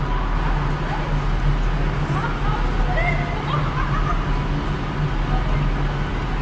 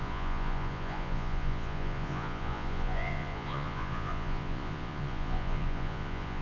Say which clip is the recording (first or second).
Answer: first